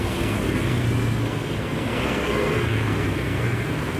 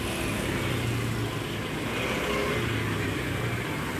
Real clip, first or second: second